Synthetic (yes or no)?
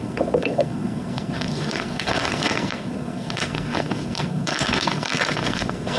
yes